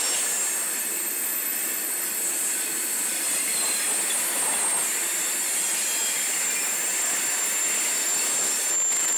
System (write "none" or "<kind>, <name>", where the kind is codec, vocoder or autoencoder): none